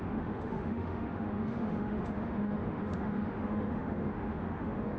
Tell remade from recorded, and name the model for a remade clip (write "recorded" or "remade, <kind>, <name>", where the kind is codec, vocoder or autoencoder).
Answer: remade, autoencoder, DAC-VAE